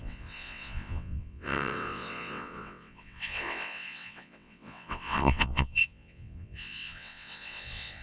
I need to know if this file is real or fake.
fake